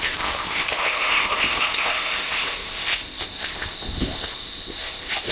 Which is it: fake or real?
fake